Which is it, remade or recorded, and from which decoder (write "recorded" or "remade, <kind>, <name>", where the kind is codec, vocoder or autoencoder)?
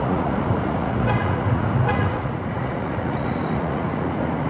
remade, vocoder, Vocos